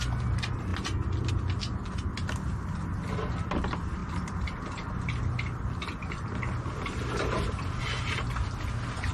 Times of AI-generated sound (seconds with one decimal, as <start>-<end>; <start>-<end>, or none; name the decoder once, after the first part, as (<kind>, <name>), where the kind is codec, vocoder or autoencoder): none